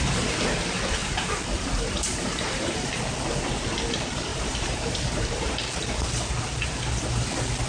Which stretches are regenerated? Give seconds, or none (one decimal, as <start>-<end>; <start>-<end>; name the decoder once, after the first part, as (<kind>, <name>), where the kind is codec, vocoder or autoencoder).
1.0-2.9 (vocoder, BigVGAN v2); 4.3-5.5